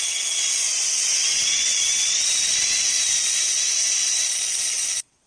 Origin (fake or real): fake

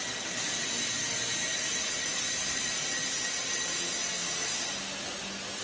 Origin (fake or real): real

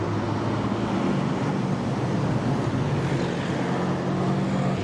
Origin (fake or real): real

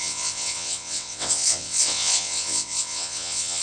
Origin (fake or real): fake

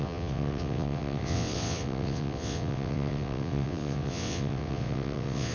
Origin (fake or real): fake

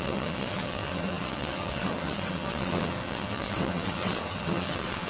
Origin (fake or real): fake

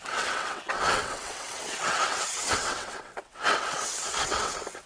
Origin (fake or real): fake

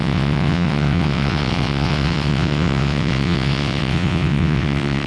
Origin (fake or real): fake